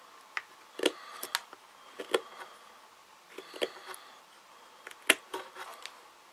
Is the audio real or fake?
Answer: real